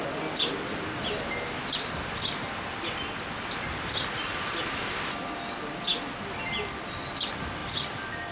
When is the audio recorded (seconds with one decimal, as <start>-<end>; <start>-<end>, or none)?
0.0-7.6